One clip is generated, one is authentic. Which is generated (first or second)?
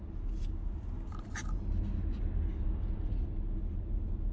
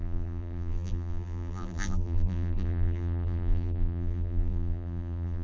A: second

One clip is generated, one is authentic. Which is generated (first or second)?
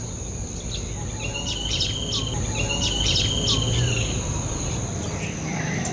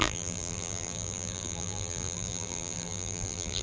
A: second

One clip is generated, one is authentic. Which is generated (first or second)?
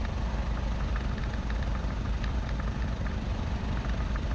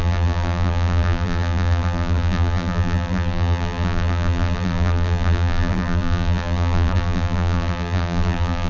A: second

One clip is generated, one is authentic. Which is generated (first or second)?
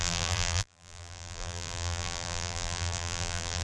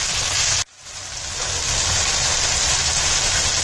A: first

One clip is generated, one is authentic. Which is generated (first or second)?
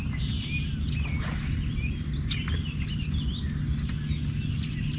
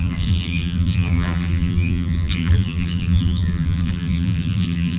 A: second